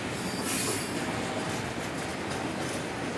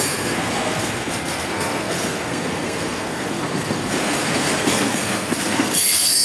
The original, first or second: first